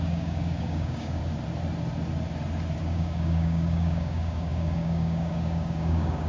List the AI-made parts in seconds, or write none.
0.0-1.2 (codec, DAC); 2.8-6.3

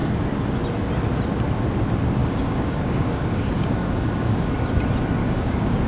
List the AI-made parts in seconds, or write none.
2.2-4.5 (codec, DAC); 5.2-5.9